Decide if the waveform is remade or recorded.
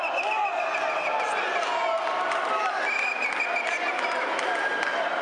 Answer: recorded